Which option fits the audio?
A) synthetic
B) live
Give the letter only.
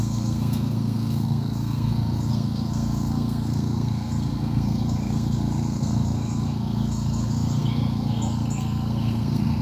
A